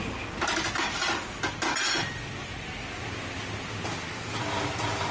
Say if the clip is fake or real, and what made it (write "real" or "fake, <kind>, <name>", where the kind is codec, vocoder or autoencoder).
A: real